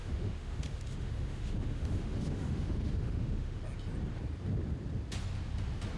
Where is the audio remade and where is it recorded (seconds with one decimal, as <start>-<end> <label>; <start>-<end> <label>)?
0.0-3.6 remade; 3.6-6.0 recorded